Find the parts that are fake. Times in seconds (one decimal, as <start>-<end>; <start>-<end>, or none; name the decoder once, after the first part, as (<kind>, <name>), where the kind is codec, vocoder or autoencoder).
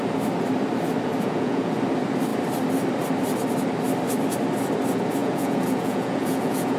1.1-1.8 (vocoder, Vocos); 5.2-6.8